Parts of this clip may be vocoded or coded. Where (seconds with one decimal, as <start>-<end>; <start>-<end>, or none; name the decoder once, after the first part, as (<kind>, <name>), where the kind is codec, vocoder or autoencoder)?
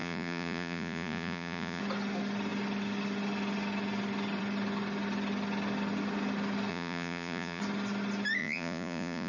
0.0-1.8 (vocoder, Vocos); 6.7-7.6; 8.4-9.3